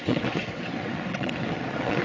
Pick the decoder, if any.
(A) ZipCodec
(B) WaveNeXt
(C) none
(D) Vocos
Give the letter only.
B